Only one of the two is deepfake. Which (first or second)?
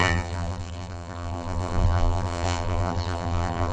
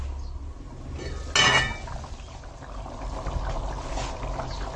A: first